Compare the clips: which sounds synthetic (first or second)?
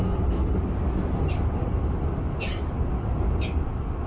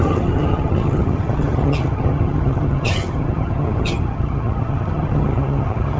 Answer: second